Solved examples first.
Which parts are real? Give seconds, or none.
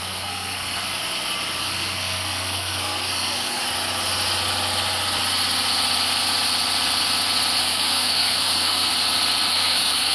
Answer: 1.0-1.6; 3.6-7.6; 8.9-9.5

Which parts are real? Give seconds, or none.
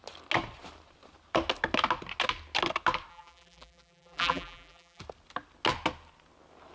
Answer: 0.0-3.1; 5.0-6.7